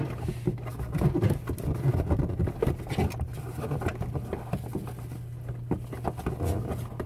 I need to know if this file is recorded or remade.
recorded